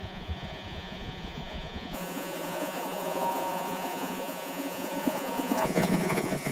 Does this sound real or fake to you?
fake